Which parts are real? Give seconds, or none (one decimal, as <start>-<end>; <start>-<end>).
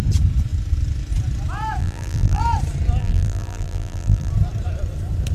0.0-1.8; 2.4-3.0; 4.3-5.3